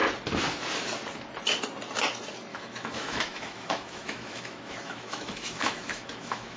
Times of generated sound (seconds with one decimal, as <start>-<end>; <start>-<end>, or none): 2.5-6.6